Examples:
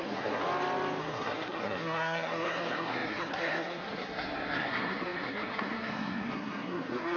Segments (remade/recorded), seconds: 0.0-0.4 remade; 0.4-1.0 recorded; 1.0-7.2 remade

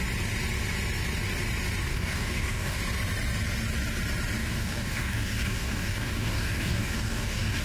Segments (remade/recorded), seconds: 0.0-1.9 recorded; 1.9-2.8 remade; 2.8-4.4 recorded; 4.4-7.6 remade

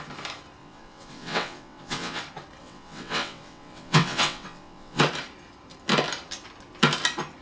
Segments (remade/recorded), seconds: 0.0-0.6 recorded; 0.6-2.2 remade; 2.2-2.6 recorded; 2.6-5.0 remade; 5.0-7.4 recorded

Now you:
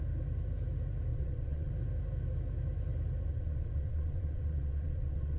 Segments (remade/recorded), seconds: 0.0-1.1 recorded; 1.1-1.7 remade; 1.7-3.3 recorded; 3.3-5.4 remade